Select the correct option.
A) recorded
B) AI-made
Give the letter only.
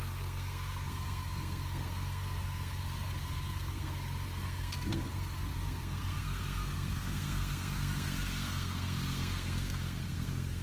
B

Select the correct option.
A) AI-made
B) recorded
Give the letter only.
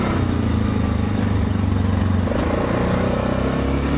B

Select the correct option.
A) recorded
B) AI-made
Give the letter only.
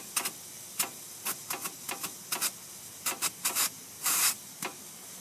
A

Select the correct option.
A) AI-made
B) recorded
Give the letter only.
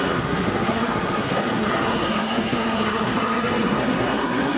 A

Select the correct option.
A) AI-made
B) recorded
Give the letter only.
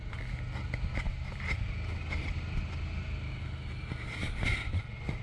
B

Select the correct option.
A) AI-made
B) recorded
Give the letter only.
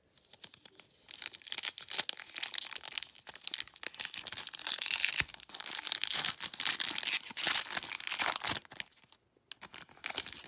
B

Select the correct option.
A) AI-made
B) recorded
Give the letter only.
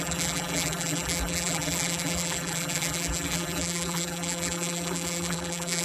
A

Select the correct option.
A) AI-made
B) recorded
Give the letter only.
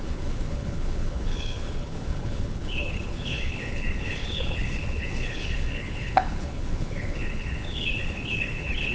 A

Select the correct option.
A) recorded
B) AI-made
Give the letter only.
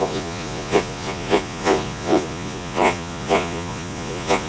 B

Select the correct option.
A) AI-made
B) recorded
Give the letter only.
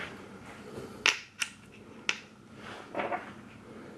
B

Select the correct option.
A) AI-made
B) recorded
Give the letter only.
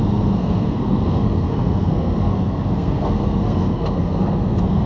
A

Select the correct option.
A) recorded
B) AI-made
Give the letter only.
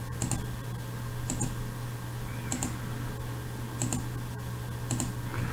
A